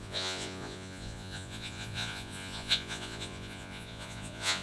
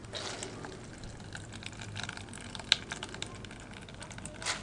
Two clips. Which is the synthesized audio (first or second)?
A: first